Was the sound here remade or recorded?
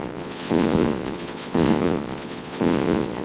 remade